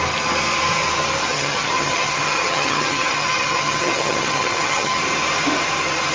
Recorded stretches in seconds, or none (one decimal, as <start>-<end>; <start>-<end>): 0.0-1.3; 5.0-6.1

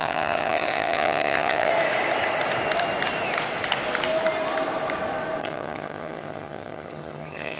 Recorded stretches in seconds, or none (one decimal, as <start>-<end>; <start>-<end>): 1.7-5.4

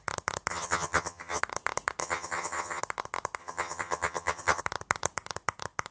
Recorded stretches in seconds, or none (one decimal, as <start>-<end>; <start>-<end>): 0.0-0.5; 1.4-2.0; 2.8-3.4; 4.6-5.9

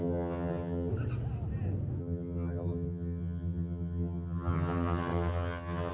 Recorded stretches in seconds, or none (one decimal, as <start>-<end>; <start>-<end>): 0.9-2.0

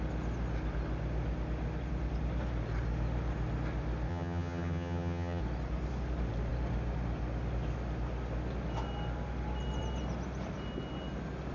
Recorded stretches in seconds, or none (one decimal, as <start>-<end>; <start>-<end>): 0.0-4.1; 5.4-11.5

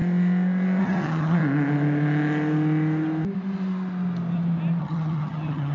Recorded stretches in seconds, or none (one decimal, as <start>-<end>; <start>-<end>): 0.0-0.8; 1.4-4.8

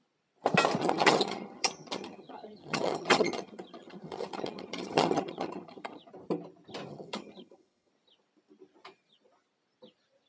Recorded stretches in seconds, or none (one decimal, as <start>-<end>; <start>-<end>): 0.0-0.8; 6.0-6.9; 7.9-10.3